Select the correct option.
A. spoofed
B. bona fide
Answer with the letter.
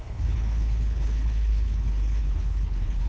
A